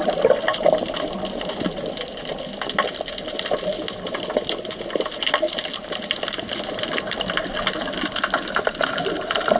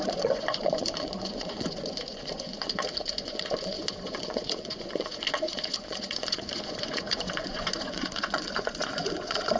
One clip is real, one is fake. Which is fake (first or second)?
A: second